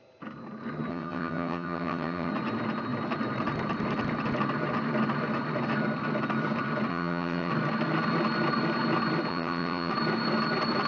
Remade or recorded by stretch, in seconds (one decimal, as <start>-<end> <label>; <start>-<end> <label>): 0.0-0.9 recorded; 0.9-2.3 remade; 2.3-6.9 recorded; 6.9-7.5 remade; 7.5-9.3 recorded; 9.3-9.9 remade; 9.9-10.9 recorded